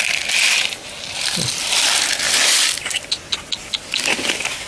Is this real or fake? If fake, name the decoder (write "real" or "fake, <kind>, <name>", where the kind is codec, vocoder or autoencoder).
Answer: real